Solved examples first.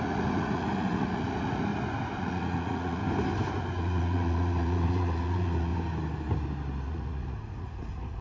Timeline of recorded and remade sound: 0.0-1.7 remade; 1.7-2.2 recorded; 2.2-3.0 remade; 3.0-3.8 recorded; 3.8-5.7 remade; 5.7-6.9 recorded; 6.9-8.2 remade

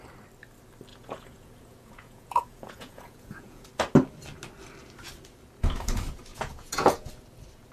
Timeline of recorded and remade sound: 0.0-0.9 recorded; 0.9-3.7 remade; 3.7-6.3 recorded; 6.3-7.1 remade; 7.1-7.7 recorded